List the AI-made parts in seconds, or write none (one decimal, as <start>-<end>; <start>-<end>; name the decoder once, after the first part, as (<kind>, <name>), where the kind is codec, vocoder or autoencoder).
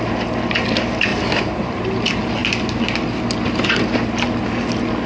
1.1-1.8 (vocoder, BigVGAN v2)